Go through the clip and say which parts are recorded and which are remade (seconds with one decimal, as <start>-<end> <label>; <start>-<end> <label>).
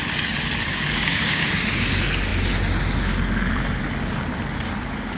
0.0-0.6 recorded; 0.6-1.5 remade; 1.5-5.2 recorded